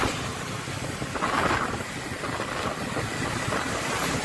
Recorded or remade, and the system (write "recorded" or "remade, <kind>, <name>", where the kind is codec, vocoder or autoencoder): recorded